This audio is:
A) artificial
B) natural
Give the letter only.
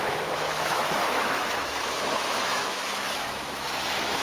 A